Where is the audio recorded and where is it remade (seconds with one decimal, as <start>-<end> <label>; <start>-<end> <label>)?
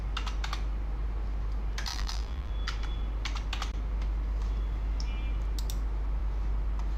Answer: 0.0-1.9 recorded; 1.9-2.5 remade; 2.5-7.0 recorded